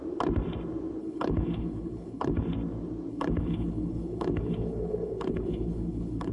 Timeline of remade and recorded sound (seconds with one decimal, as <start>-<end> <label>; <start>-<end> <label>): 0.0-1.0 recorded; 1.0-2.4 remade; 2.4-3.1 recorded; 3.1-6.3 remade